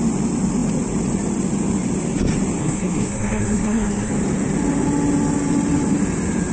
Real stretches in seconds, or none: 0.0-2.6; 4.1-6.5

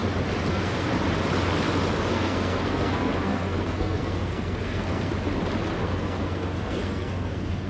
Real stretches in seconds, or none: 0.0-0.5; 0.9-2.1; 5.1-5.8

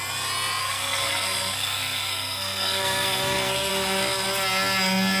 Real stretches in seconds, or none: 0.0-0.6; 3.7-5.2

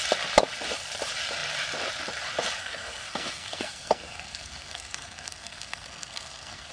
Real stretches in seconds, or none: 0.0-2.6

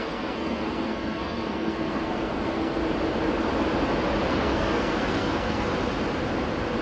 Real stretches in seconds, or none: 2.8-4.3; 5.7-6.8

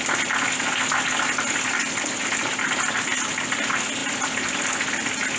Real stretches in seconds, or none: 0.0-5.4

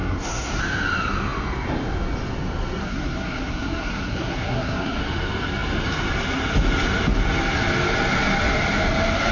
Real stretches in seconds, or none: 0.6-2.8; 5.0-9.3

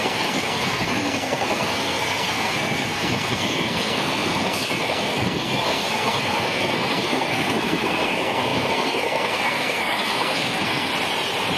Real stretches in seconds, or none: 10.9-11.6